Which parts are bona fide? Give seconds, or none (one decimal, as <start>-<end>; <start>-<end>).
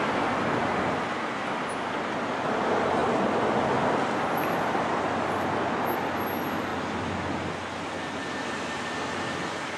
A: 0.0-9.8